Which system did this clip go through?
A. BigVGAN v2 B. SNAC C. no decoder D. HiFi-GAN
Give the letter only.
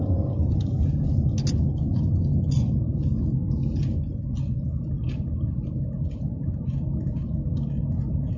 C